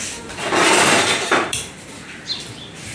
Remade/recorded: remade